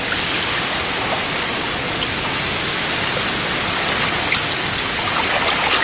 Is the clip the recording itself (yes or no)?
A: yes